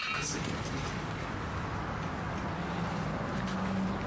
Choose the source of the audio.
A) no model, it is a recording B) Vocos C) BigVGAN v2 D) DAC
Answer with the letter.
A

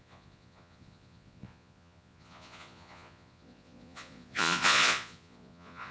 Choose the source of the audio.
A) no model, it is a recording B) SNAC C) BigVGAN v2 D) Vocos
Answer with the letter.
D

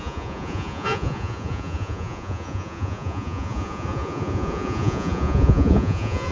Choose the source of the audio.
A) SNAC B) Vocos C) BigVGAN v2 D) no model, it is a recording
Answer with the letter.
B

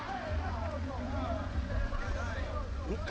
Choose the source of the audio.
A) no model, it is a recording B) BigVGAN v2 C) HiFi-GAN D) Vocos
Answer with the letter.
D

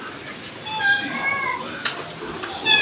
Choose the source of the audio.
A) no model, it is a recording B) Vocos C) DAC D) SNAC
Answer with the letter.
A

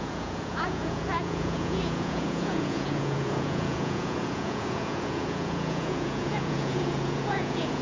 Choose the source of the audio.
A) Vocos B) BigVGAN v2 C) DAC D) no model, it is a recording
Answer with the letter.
A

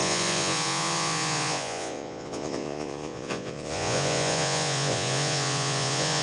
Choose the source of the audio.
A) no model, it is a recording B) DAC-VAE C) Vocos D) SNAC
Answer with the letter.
C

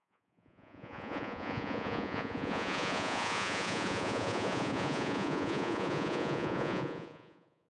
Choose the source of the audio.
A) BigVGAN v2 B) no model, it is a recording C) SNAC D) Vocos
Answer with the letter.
D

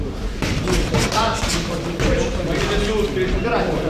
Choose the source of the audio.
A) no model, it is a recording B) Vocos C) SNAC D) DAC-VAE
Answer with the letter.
A